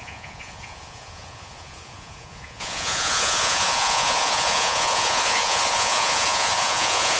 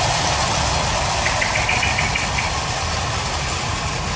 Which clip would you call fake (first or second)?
first